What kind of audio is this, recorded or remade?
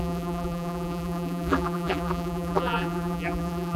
remade